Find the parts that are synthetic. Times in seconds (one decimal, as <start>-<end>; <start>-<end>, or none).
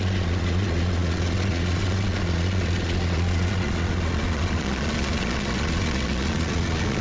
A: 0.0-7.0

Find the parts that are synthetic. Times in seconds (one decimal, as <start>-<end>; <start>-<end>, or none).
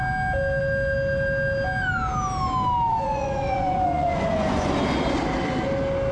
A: 2.9-4.8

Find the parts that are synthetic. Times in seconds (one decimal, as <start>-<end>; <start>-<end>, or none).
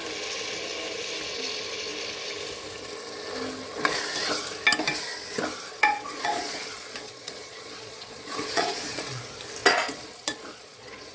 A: 5.7-9.2; 9.6-11.1